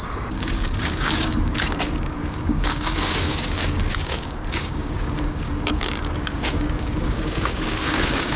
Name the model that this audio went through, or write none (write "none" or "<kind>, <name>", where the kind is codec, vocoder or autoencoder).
codec, DAC